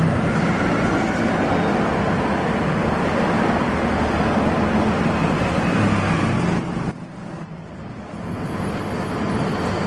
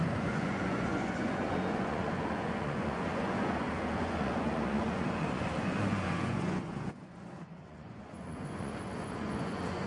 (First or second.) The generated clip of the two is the second